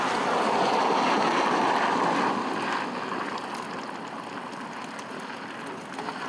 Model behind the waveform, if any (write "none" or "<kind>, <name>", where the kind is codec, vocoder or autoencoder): none